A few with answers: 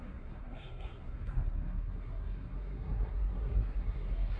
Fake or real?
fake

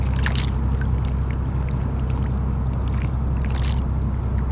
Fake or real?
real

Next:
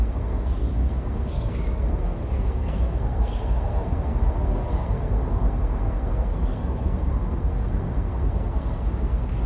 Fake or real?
fake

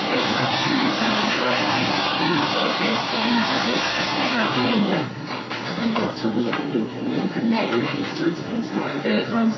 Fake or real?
fake